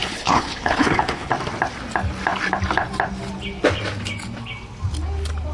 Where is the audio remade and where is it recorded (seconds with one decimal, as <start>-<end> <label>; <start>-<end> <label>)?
0.0-1.3 remade; 1.3-5.5 recorded